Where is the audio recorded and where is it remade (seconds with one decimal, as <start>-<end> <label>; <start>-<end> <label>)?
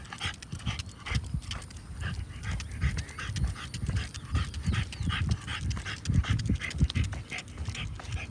0.0-8.3 recorded